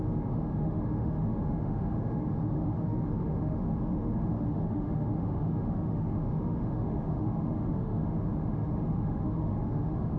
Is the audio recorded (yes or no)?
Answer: no